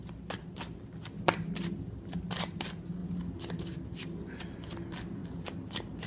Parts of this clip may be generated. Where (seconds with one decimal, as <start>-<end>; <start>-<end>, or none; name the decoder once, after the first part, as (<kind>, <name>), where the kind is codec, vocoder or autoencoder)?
none

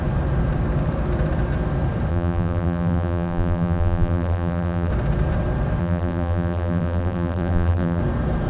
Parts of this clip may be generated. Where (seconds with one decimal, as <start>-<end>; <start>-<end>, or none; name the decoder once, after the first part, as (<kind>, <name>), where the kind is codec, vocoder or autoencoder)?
2.1-4.9 (vocoder, BigVGAN v2); 5.8-8.0

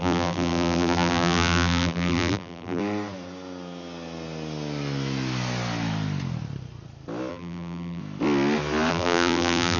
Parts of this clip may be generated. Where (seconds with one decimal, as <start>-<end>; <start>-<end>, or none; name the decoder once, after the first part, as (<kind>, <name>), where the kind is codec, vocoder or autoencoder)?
0.0-2.8 (vocoder, BigVGAN v2); 7.3-8.0; 8.9-9.8

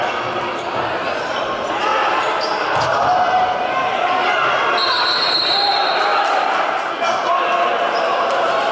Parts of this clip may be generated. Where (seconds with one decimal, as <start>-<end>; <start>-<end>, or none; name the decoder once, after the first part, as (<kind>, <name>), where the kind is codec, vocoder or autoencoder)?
6.1-6.8 (vocoder, BigVGAN v2)

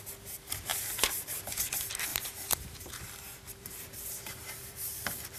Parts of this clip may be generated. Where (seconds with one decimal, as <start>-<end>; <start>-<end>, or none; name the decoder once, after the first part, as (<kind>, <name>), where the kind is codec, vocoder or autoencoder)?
0.7-1.6 (vocoder, BigVGAN v2); 2.1-5.4

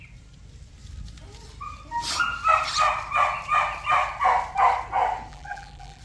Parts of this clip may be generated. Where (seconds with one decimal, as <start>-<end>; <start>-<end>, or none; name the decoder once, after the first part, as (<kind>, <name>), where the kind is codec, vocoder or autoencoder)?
5.3-6.0 (vocoder, BigVGAN v2)

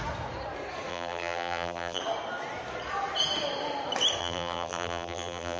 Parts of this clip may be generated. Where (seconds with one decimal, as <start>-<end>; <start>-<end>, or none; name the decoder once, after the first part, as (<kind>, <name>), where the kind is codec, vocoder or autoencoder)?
0.9-2.0 (vocoder, BigVGAN v2); 4.2-5.6